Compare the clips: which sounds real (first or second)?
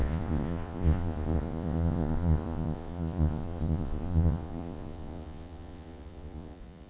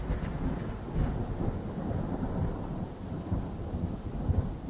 second